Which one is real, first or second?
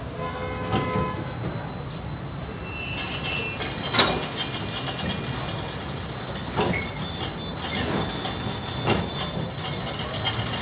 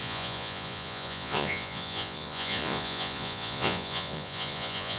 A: first